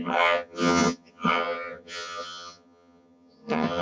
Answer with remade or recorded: remade